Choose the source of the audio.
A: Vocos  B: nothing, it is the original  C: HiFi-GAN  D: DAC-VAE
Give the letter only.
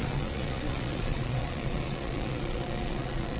A